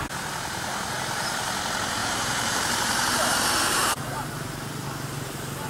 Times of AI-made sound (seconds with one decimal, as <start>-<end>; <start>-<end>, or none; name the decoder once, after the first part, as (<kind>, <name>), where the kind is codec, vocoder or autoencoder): 2.0-5.7 (vocoder, BigVGAN v2)